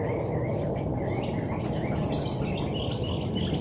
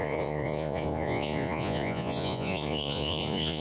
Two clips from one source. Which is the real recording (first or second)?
first